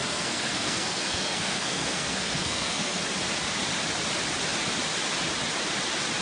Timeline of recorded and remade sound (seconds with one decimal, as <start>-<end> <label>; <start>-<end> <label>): 0.0-3.0 remade; 3.0-6.2 recorded